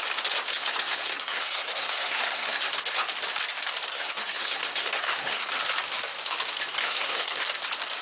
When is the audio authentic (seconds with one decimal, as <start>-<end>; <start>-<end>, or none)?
0.0-0.5; 2.7-3.9; 5.5-6.8; 7.4-8.0